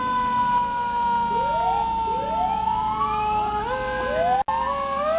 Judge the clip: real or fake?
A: real